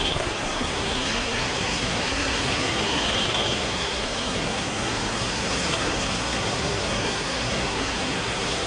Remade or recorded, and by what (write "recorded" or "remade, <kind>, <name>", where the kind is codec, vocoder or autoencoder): remade, codec, SNAC